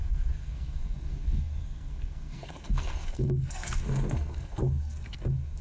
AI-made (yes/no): yes